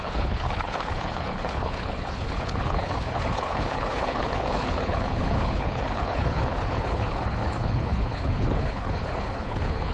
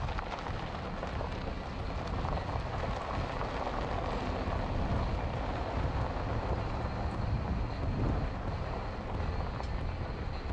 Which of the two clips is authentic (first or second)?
second